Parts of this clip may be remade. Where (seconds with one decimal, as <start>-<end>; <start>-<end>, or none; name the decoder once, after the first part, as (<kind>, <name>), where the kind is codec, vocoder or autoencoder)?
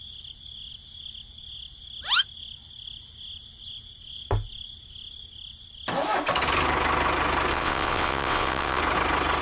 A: 7.5-8.8 (vocoder, WaveNeXt)